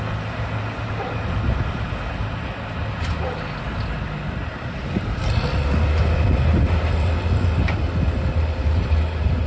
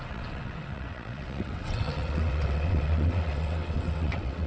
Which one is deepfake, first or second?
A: second